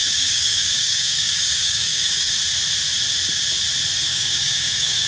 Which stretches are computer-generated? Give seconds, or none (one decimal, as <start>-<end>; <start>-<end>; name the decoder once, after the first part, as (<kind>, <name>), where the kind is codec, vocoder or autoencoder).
0.0-2.3 (codec, DAC); 4.1-5.1